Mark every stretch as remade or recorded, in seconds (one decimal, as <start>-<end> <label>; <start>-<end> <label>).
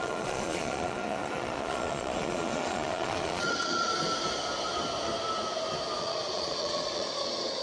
0.0-3.9 remade; 3.9-6.0 recorded; 6.0-7.6 remade